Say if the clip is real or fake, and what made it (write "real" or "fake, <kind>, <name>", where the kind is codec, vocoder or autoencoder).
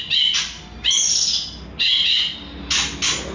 real